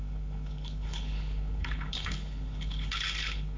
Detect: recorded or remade remade